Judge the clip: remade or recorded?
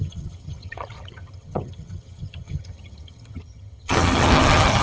remade